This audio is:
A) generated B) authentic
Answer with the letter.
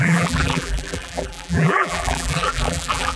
A